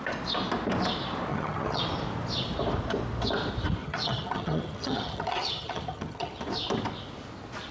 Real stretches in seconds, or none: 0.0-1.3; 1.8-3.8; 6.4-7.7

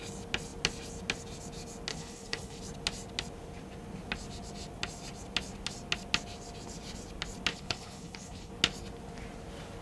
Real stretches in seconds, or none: 0.0-1.9; 2.6-7.5; 8.5-9.8